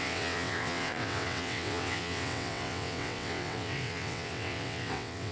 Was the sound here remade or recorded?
remade